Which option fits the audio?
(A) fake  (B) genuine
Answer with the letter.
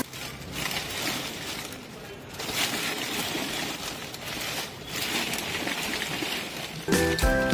B